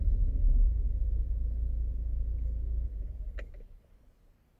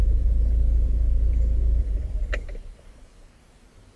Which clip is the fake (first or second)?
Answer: second